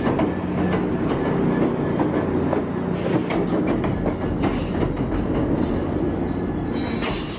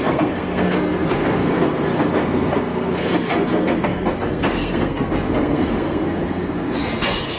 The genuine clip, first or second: first